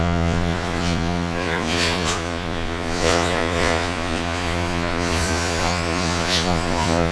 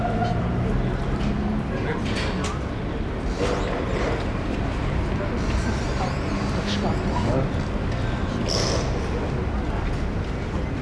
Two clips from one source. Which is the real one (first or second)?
second